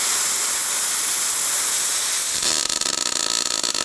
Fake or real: real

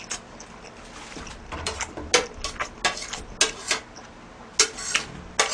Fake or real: real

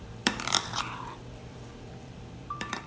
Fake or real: fake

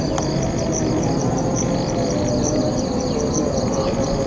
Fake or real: real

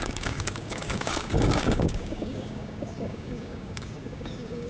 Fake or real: fake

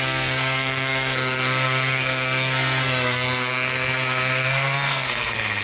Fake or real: fake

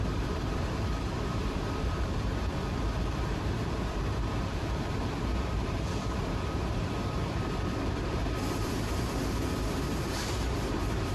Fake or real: fake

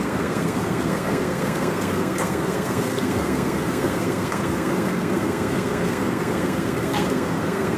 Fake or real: fake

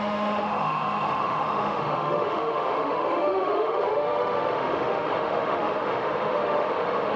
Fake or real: fake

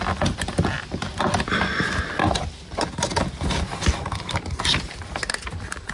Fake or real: real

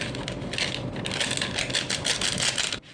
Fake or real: real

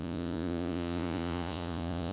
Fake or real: fake